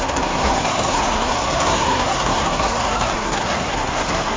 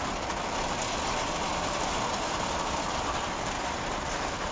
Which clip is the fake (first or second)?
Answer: first